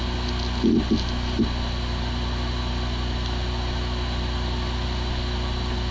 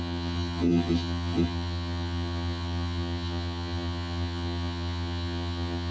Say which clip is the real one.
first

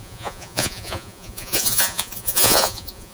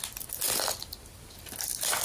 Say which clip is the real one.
second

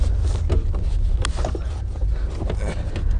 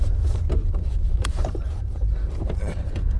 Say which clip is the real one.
first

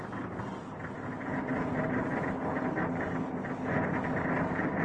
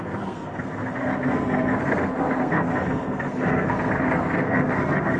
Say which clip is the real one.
first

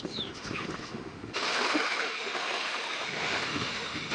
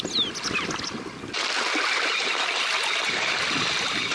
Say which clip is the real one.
second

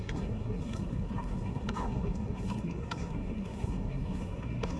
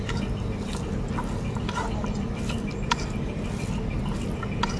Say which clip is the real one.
second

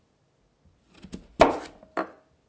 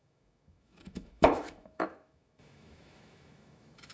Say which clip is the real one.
first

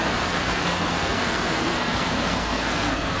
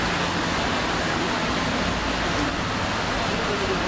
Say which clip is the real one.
second